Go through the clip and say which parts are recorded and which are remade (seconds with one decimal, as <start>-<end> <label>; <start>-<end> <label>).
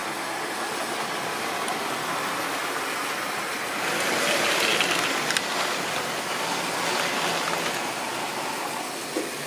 0.0-9.5 recorded